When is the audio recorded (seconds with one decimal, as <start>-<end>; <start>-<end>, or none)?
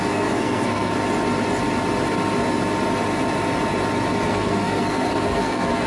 0.9-4.3